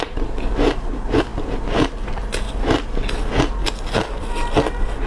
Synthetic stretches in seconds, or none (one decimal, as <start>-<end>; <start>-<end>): none